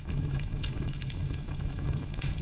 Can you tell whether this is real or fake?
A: fake